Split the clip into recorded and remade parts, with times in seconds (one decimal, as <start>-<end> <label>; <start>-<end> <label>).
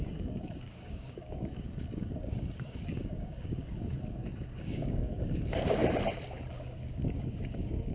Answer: 0.0-5.8 remade; 5.8-6.5 recorded; 6.5-7.9 remade